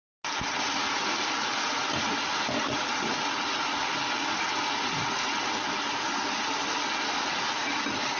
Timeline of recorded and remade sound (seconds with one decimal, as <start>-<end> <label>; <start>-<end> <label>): 0.0-8.2 recorded